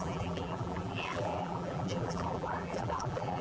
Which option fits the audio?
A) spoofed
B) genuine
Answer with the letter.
A